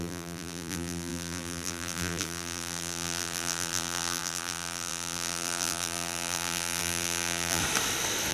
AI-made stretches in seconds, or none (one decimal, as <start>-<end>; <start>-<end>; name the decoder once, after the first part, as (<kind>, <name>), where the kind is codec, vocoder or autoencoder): 0.0-7.6 (vocoder, BigVGAN v2)